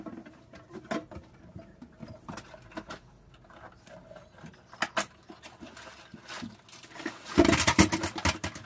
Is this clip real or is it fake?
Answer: real